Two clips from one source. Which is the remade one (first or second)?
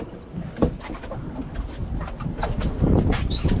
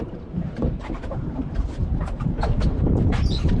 second